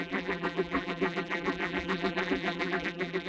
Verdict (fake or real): fake